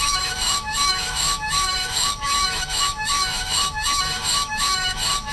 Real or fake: fake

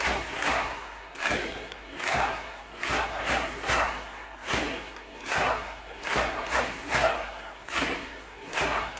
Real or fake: fake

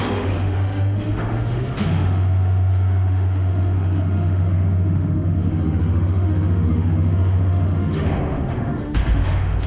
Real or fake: fake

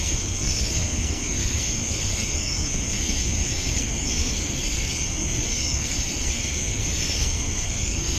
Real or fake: fake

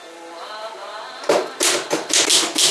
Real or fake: real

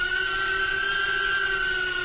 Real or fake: real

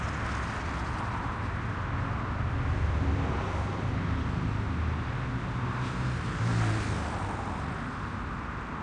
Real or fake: real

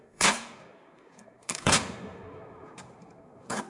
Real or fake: fake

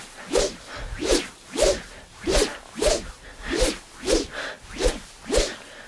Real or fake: real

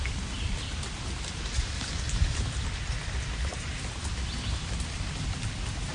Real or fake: fake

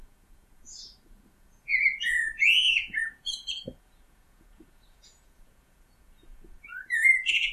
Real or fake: fake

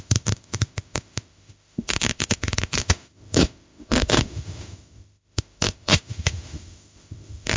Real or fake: fake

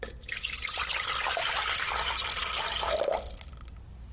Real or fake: fake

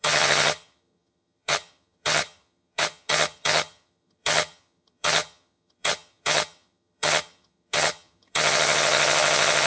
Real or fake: fake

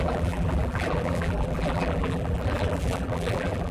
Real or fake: fake